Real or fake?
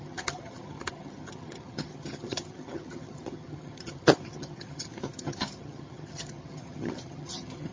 fake